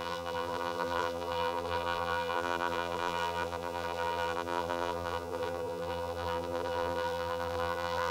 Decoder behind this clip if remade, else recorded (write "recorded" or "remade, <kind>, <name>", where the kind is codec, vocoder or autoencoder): remade, vocoder, BigVGAN v2